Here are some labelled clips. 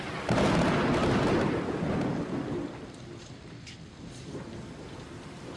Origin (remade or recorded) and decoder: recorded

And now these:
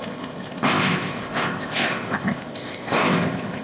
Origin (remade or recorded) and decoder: remade, codec, ZipCodec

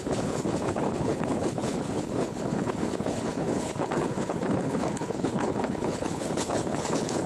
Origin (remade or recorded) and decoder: remade, codec, HILCodec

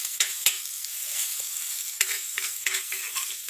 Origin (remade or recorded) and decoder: remade, codec, SNAC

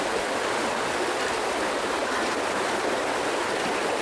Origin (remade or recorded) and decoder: recorded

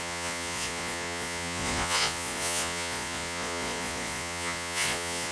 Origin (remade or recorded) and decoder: remade, vocoder, Vocos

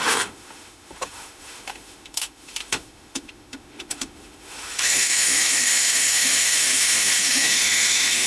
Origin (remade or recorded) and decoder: remade, autoencoder, DAC-VAE